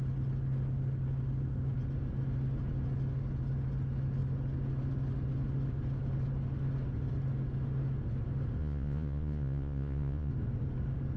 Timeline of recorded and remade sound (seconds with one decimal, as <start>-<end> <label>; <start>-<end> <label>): 0.0-8.6 recorded; 8.6-10.3 remade; 10.3-11.2 recorded